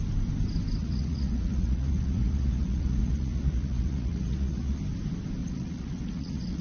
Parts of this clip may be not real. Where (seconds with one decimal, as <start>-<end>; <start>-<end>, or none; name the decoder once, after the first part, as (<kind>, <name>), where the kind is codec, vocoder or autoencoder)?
0.8-4.8 (vocoder, Vocos); 5.4-6.6